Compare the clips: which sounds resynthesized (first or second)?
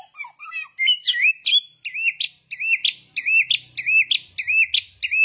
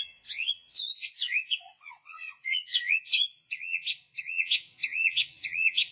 second